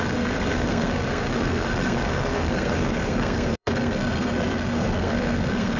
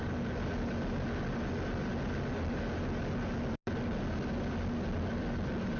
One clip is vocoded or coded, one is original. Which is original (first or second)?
second